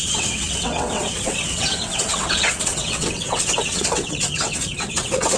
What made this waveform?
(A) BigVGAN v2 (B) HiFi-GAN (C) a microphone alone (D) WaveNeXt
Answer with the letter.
D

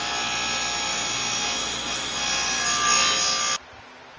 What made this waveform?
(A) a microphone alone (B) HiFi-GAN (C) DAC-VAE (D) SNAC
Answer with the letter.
A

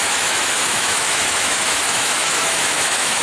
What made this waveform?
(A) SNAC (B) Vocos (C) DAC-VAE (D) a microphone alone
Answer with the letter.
C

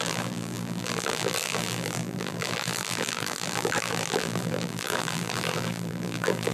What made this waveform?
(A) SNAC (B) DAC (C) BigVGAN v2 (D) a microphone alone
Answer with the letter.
C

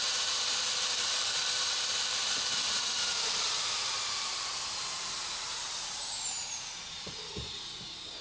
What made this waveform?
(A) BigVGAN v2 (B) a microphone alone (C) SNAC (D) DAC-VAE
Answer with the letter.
A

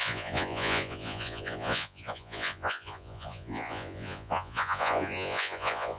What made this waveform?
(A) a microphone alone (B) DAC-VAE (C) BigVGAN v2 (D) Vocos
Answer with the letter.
D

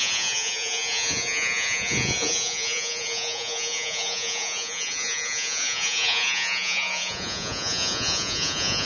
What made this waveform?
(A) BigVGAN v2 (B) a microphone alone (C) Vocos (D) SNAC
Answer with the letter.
C